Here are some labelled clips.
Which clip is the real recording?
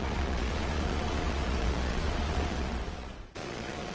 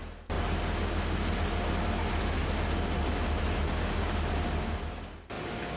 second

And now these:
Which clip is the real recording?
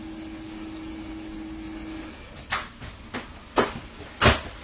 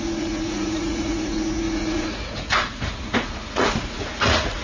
first